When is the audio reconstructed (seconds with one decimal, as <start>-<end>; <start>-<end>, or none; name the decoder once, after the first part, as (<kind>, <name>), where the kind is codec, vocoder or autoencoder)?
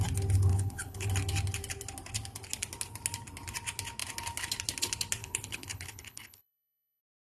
0.5-1.1 (codec, HILCodec); 5.2-7.0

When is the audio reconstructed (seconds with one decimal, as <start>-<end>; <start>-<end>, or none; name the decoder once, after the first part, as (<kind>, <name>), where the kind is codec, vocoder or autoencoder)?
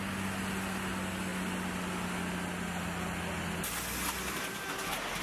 none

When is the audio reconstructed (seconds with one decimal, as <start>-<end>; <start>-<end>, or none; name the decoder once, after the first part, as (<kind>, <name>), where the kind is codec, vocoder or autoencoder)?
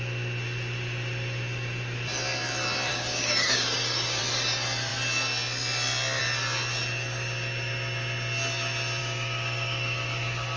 2.9-4.2 (codec, DAC); 9.0-10.6